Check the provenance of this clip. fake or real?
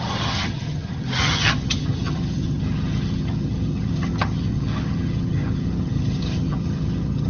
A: fake